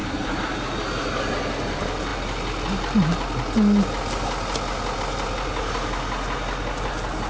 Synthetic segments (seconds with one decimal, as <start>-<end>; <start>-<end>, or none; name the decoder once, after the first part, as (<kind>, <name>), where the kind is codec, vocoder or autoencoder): none